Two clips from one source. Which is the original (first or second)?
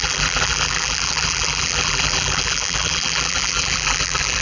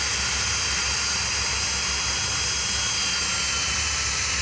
second